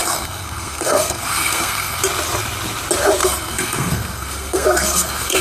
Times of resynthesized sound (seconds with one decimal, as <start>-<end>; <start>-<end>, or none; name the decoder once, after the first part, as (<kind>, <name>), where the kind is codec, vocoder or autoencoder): 0.0-2.0 (codec, SNAC); 3.2-5.4